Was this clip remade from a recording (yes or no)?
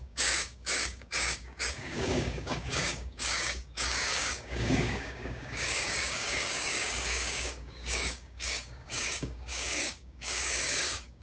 yes